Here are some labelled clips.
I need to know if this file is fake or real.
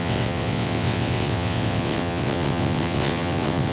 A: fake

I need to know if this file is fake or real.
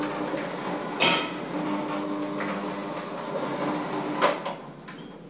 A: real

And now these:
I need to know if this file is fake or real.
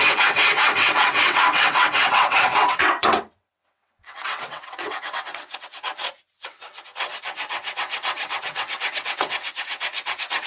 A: fake